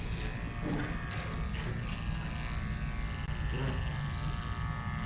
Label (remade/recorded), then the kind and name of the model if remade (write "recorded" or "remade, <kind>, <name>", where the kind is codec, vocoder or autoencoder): recorded